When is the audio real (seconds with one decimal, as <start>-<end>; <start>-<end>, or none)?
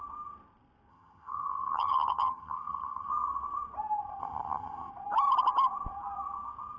0.0-0.9; 3.1-4.2; 4.9-6.8